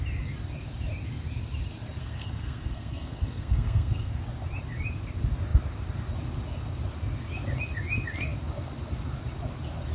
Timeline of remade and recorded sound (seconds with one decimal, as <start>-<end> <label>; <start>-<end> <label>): 0.0-2.0 recorded; 2.0-4.2 remade; 4.2-9.9 recorded